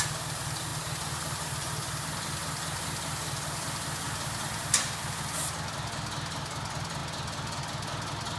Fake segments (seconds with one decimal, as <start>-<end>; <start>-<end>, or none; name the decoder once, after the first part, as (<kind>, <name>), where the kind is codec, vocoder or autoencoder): none